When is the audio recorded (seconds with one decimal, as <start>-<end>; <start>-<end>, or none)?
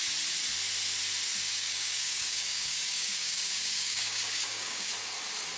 0.0-1.5; 4.9-5.6